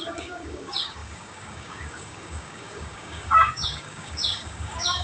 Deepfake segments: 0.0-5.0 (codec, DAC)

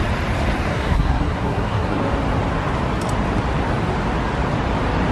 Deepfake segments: 0.7-2.0 (codec, SNAC)

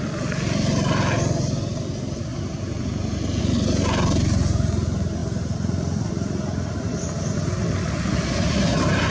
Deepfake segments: none

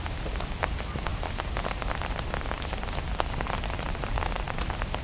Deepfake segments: none

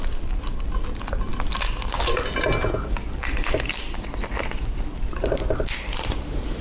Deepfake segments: none

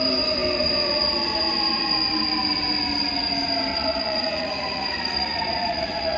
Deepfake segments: 3.7-6.2 (vocoder, Vocos)

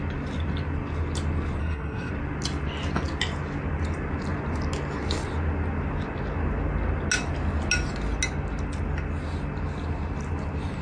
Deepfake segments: 1.6-2.1 (codec, SNAC)